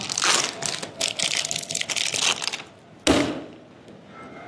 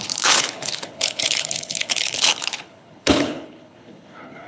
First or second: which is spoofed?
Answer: second